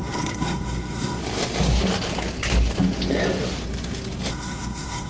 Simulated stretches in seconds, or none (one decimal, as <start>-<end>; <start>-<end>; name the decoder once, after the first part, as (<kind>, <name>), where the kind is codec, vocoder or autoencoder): 0.0-1.2 (codec, SNAC); 4.3-5.1